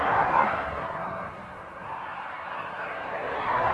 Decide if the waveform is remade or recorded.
remade